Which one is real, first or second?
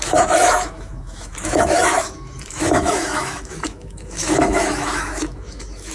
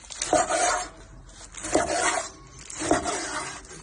second